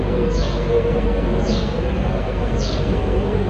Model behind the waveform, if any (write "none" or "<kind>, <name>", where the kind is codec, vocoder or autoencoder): codec, SNAC